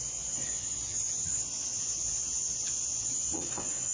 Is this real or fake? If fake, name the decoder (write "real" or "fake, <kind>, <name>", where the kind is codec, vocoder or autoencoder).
fake, vocoder, Vocos